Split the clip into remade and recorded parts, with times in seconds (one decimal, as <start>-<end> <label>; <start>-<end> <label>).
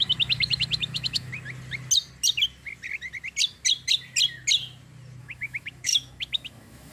0.0-1.3 remade; 1.3-5.2 recorded; 5.2-6.9 remade